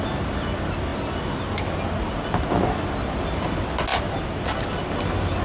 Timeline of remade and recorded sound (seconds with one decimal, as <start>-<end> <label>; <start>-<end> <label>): 0.0-5.4 recorded